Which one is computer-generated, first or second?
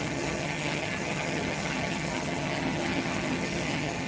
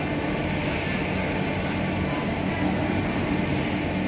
first